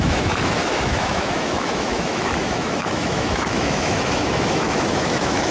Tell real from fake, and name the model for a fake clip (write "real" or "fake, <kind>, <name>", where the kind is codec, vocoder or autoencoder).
fake, autoencoder, DAC-VAE